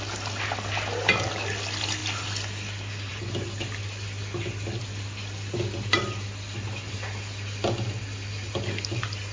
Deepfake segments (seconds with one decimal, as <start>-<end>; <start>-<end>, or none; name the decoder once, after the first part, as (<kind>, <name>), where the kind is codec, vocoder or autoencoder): none